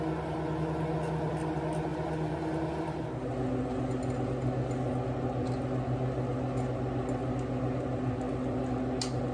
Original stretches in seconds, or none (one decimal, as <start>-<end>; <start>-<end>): 0.0-1.9; 3.0-9.3